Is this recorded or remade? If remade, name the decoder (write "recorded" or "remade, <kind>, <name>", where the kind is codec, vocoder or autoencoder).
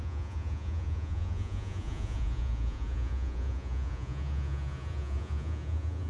remade, vocoder, Vocos